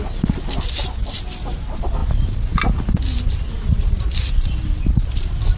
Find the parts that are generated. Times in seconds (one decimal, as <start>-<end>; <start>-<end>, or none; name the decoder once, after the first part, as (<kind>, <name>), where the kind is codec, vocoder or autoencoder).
none

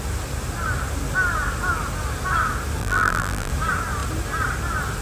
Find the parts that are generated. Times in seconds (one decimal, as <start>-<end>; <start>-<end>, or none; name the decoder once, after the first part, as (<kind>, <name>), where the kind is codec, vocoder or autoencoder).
2.8-3.5 (vocoder, BigVGAN v2)

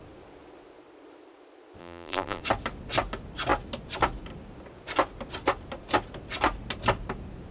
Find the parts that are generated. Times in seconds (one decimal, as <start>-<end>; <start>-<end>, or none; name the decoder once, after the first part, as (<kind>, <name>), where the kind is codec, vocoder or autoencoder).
1.8-2.4 (vocoder, BigVGAN v2)

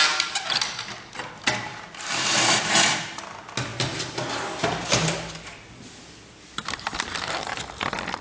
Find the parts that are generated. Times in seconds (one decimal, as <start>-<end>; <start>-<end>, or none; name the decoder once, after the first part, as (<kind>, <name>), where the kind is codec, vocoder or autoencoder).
1.7-3.2 (vocoder, BigVGAN v2)

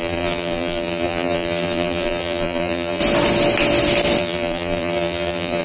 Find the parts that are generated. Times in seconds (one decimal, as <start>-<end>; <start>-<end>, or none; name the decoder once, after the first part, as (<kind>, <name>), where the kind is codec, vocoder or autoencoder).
0.0-3.0 (vocoder, BigVGAN v2); 4.2-5.6

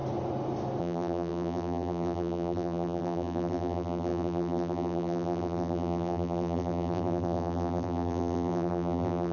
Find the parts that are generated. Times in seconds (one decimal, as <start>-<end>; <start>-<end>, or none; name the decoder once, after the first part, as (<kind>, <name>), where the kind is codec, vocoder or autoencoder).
0.8-9.3 (vocoder, BigVGAN v2)